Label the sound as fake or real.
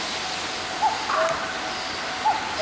real